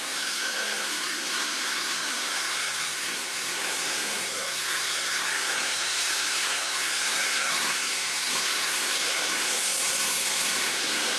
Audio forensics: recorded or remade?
remade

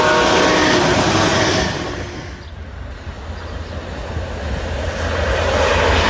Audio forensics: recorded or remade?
recorded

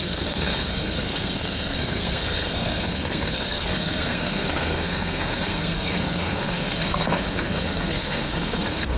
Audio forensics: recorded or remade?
remade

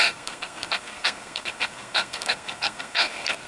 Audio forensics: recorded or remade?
remade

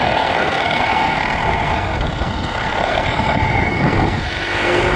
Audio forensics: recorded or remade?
remade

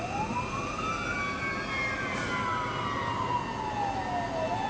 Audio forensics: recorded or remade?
recorded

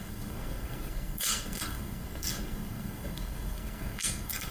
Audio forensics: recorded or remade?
remade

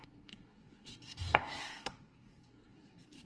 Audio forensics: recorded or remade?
remade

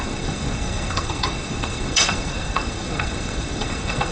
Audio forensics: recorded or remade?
remade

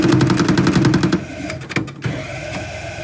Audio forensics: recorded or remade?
recorded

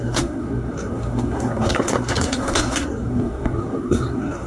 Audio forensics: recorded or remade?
remade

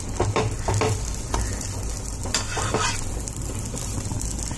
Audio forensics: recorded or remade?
recorded